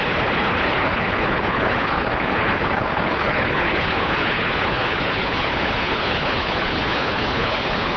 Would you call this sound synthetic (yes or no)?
yes